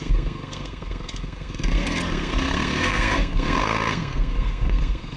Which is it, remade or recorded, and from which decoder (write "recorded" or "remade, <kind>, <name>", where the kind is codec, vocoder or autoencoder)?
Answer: remade, codec, SNAC